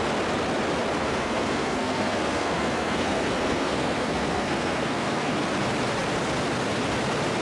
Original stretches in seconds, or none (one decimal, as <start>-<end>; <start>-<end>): 0.0-1.0; 5.3-7.4